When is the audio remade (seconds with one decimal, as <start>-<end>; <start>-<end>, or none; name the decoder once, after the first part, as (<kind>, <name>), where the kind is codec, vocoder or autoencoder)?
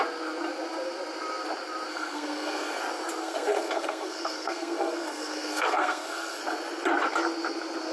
1.9-2.8 (codec, SNAC); 3.2-6.4